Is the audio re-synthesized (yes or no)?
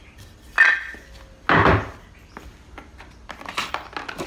no